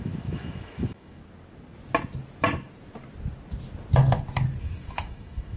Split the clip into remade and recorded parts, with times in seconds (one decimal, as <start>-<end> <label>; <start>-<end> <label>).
0.0-1.2 remade; 1.2-4.6 recorded; 4.6-5.6 remade